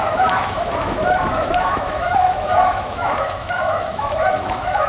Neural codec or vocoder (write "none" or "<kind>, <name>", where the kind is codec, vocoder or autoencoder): autoencoder, DAC-VAE